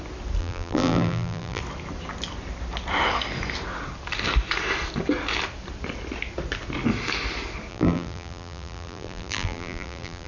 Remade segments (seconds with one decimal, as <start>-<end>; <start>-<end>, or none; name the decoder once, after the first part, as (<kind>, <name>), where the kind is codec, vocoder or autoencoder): 0.4-1.6 (vocoder, BigVGAN v2); 7.7-10.3